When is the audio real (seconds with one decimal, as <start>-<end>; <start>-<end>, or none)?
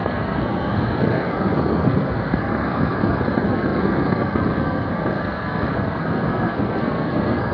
none